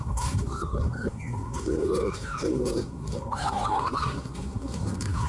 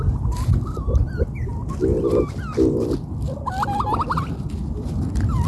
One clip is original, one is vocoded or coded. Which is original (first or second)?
second